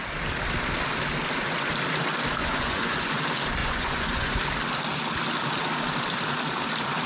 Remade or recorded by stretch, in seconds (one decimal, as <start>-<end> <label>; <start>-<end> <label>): 0.0-2.4 recorded; 2.4-3.2 remade; 3.2-3.6 recorded; 3.6-4.4 remade; 4.4-7.1 recorded